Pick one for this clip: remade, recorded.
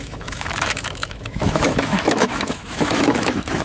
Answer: remade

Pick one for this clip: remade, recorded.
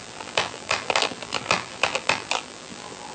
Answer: remade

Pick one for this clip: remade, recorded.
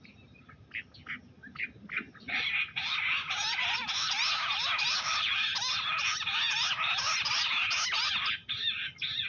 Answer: recorded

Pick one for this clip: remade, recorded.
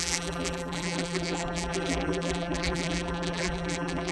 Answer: remade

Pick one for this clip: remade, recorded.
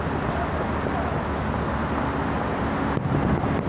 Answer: recorded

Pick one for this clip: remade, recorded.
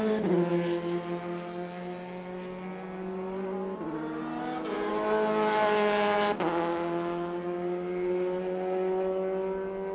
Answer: recorded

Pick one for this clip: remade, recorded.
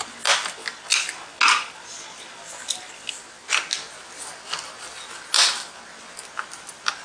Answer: recorded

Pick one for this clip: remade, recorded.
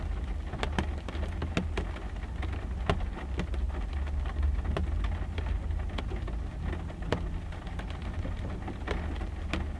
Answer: recorded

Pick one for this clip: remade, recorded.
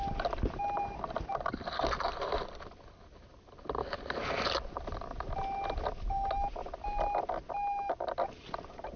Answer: recorded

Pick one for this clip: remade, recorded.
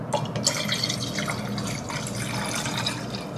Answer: recorded